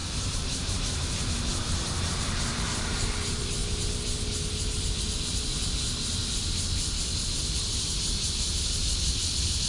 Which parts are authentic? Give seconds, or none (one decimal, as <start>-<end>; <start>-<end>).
3.6-7.7; 8.8-9.7